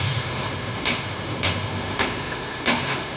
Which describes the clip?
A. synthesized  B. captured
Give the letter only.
A